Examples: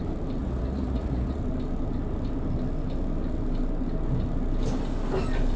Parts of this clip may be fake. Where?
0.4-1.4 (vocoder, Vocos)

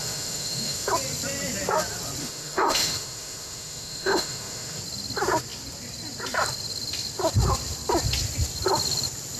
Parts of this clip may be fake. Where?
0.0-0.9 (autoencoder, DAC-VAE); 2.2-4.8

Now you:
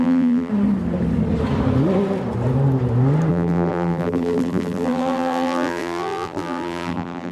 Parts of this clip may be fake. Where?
0.0-0.5 (vocoder, BigVGAN v2); 3.3-7.3